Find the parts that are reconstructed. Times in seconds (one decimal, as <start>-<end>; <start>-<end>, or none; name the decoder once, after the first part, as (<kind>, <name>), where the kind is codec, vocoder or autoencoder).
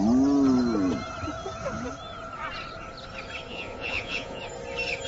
3.5-4.4 (vocoder, Vocos)